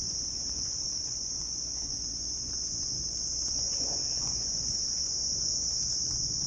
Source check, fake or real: fake